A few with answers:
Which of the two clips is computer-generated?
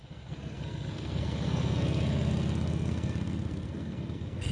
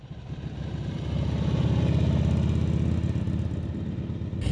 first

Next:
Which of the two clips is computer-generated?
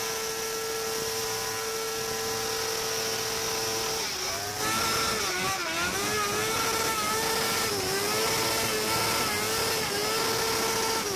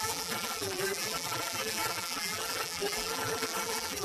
second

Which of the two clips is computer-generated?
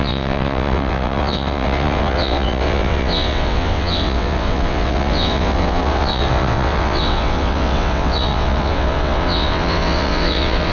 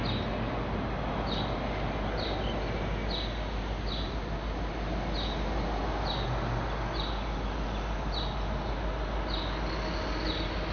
first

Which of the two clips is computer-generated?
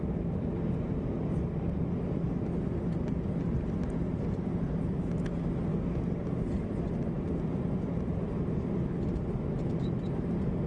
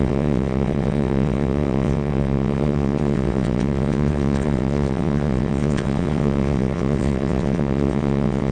second